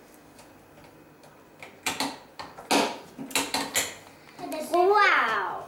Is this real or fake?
real